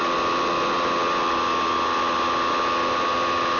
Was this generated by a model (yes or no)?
no